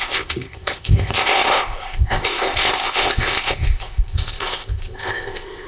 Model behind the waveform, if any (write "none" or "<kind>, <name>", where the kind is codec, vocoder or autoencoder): codec, ZipCodec